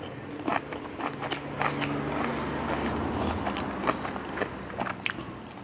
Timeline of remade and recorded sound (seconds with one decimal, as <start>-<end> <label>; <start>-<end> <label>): 0.0-0.5 recorded; 0.5-1.2 remade; 1.2-5.6 recorded